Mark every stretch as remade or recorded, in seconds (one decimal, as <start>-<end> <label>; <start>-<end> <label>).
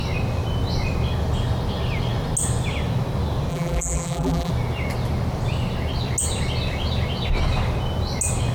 0.0-3.5 recorded; 3.5-4.5 remade; 4.5-8.5 recorded